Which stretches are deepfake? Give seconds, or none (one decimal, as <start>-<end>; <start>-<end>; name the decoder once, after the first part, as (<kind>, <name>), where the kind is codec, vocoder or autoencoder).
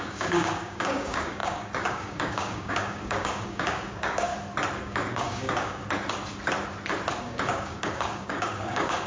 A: 0.0-4.3 (codec, DAC); 4.8-5.8; 7.2-9.1